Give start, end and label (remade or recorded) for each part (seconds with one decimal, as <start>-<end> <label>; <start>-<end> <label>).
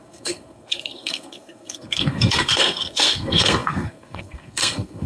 0.0-5.1 remade